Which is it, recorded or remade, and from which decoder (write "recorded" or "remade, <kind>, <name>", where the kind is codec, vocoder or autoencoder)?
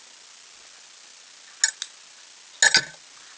recorded